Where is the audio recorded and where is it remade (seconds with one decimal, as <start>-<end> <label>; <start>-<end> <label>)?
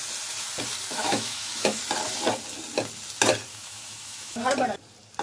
0.0-1.0 recorded; 1.0-1.8 remade; 1.8-3.5 recorded; 3.5-4.4 remade; 4.4-5.2 recorded